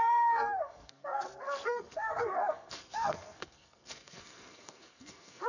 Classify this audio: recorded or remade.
remade